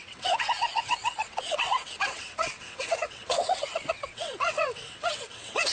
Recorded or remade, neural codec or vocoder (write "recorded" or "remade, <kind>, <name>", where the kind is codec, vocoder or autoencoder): remade, vocoder, WaveNeXt